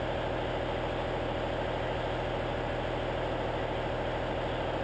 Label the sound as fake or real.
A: real